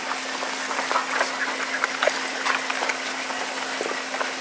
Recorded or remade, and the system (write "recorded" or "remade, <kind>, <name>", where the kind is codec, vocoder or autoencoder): recorded